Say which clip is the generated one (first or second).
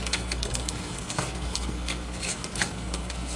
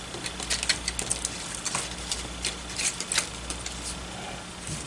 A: first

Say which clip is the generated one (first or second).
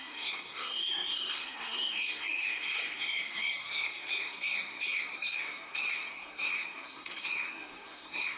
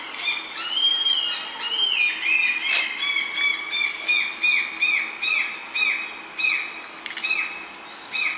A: first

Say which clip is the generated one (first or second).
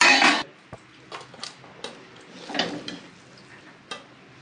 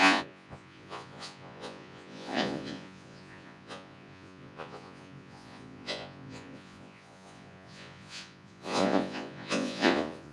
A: second